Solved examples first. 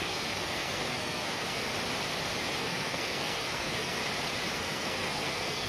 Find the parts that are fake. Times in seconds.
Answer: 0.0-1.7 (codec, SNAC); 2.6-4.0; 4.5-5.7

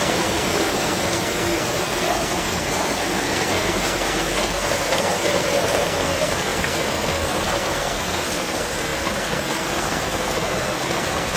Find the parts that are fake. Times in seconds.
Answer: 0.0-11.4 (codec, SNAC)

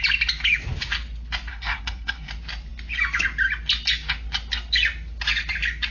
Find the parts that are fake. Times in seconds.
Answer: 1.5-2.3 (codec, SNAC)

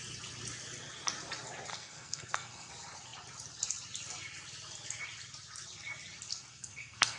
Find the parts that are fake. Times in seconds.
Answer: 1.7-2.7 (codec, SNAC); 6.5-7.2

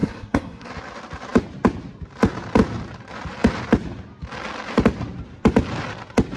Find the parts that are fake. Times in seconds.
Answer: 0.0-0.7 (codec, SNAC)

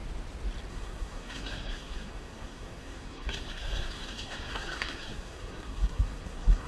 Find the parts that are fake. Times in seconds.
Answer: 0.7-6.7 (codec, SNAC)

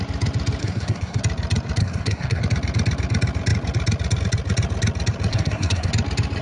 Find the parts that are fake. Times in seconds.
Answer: 0.6-1.2 (codec, SNAC); 1.8-2.4; 5.3-5.9

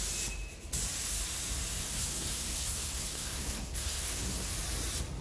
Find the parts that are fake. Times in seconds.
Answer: 1.8-4.5 (codec, SNAC)